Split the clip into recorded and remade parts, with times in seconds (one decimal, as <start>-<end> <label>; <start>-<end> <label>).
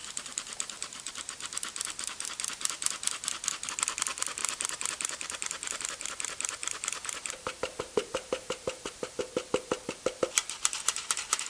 0.0-1.1 remade; 1.1-4.4 recorded; 4.4-5.8 remade; 5.8-6.6 recorded; 6.6-9.2 remade; 9.2-11.5 recorded